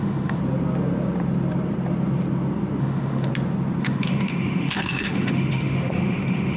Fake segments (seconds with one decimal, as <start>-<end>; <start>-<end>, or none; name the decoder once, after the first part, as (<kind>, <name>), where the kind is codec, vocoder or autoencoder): 0.0-0.4 (autoencoder, DAC-VAE); 2.8-3.3; 3.8-6.6